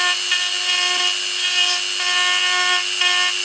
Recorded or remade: recorded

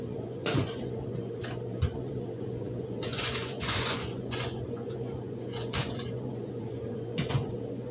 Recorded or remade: remade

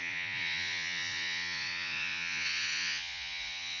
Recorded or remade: remade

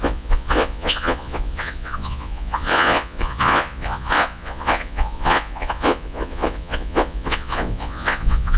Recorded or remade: remade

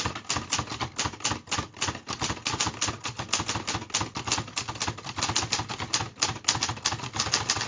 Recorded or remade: recorded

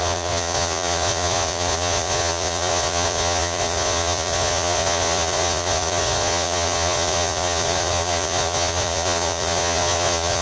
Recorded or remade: remade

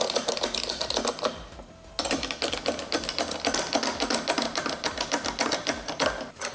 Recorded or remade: recorded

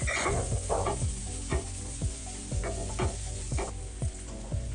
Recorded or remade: remade